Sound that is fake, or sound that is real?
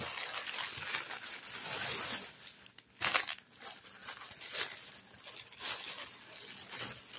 real